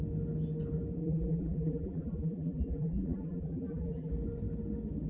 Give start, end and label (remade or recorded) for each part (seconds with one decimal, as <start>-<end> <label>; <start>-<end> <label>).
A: 0.0-1.0 recorded; 1.0-4.1 remade; 4.1-5.1 recorded